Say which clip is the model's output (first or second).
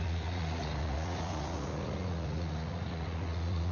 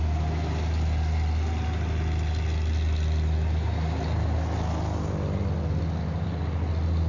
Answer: first